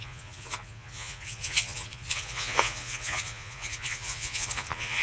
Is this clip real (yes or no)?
no